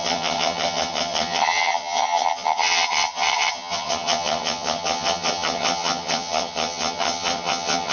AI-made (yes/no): yes